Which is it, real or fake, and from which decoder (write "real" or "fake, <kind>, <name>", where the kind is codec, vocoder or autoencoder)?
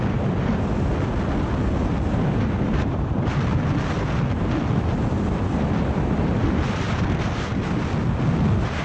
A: real